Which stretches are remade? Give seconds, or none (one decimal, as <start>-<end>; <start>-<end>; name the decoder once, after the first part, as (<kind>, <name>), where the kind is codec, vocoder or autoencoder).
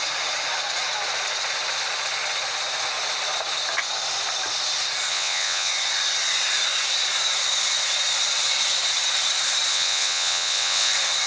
5.1-5.7 (vocoder, WaveNeXt); 9.7-10.9